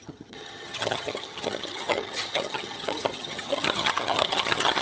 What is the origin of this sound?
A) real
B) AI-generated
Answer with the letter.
B